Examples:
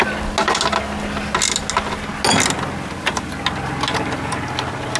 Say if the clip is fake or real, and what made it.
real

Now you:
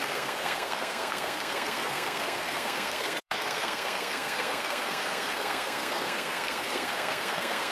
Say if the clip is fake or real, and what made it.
fake, codec, SNAC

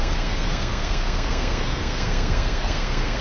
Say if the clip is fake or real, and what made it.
fake, codec, SNAC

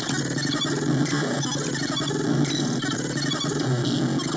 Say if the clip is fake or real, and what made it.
real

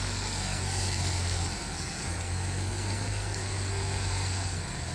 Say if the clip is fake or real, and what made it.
fake, codec, SNAC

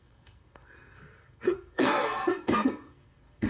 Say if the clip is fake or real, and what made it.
fake, codec, SNAC